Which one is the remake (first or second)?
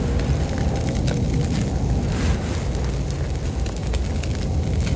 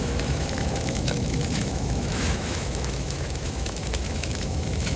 second